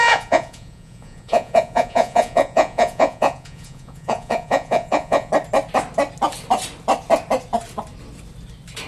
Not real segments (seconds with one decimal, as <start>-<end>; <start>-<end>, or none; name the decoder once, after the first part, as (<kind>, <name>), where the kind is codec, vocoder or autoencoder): 0.0-5.3 (vocoder, Vocos)